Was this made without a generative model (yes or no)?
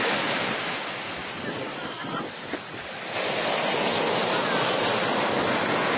yes